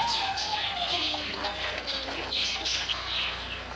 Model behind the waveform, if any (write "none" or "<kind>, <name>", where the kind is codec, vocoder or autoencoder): codec, SNAC